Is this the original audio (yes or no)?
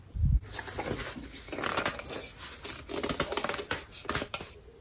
yes